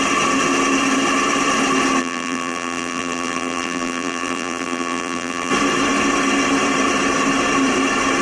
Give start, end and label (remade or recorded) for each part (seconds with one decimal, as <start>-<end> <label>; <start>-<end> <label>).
0.0-2.0 recorded; 2.0-5.5 remade; 5.5-8.2 recorded